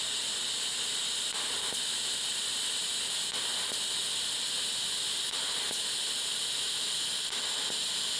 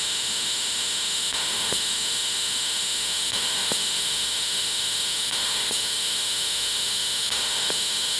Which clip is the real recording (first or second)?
first